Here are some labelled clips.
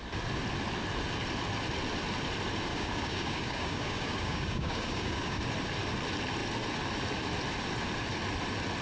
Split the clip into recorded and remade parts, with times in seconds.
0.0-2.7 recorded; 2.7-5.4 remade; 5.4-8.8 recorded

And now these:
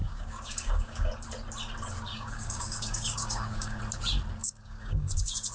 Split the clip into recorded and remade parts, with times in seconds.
0.0-1.1 remade; 1.1-2.1 recorded; 2.1-3.8 remade; 3.8-4.4 recorded; 4.4-5.5 remade